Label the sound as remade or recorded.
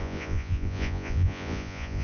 remade